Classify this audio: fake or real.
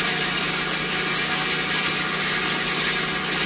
real